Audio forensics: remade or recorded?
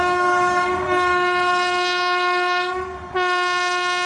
remade